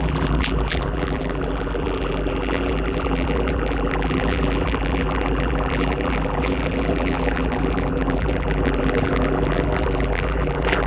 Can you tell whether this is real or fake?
fake